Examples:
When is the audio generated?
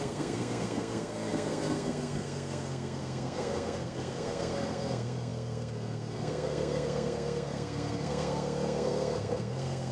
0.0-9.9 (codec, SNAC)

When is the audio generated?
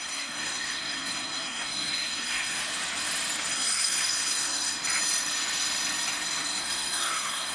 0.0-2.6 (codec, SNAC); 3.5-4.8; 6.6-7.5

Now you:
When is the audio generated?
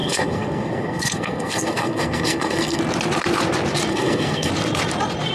0.0-2.8 (codec, SNAC); 3.9-4.5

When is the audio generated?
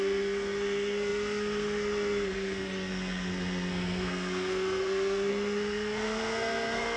0.0-7.0 (codec, SNAC)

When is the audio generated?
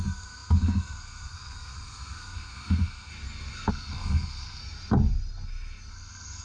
0.0-3.1 (codec, SNAC); 3.7-4.6; 5.9-6.4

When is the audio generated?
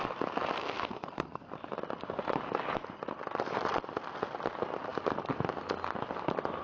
0.6-1.5 (codec, SNAC)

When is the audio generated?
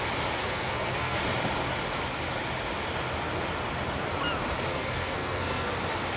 0.4-1.2 (codec, SNAC); 4.7-5.7